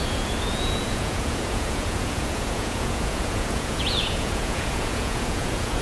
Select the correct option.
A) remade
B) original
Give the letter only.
A